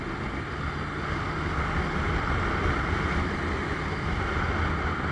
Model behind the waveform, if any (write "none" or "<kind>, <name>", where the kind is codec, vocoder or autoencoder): none